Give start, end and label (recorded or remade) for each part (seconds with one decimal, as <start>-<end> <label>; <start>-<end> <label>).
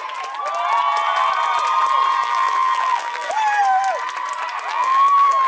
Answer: 0.0-2.2 recorded; 2.2-3.3 remade; 3.3-4.7 recorded; 4.7-5.5 remade